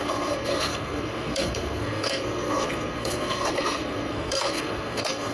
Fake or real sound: fake